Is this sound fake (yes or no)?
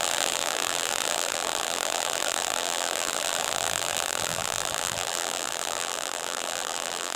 yes